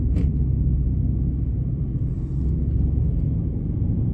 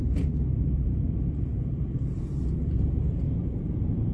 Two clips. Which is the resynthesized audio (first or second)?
second